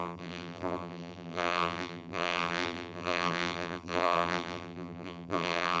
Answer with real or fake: fake